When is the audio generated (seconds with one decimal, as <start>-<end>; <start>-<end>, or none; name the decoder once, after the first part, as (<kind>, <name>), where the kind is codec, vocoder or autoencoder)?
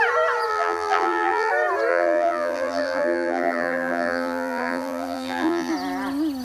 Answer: 0.5-1.5 (vocoder, BigVGAN v2); 1.9-5.7